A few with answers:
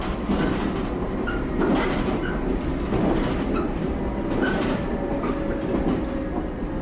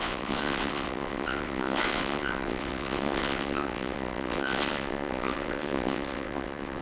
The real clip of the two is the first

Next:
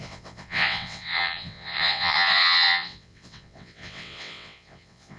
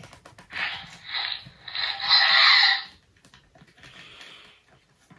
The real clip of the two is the second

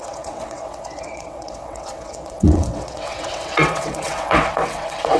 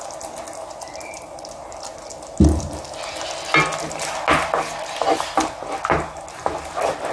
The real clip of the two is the second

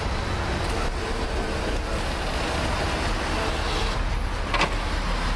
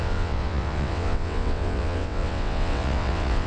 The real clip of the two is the first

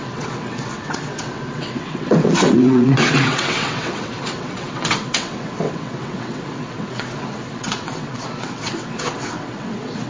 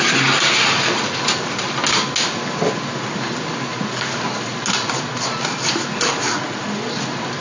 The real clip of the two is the second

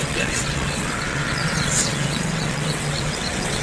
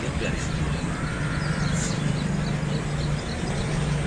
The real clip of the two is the second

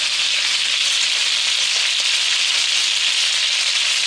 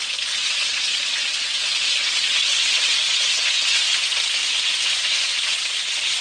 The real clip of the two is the first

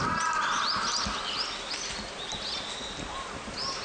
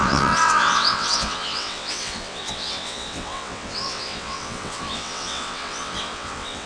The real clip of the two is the first